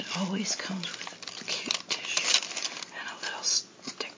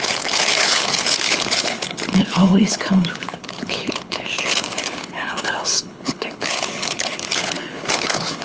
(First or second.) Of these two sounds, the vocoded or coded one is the second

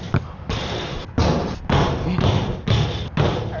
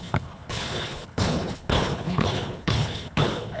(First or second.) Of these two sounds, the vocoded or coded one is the second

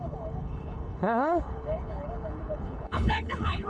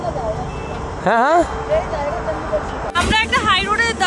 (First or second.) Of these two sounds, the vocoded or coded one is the first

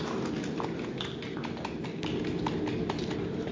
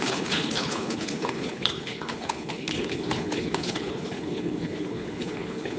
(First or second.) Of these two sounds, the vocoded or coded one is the second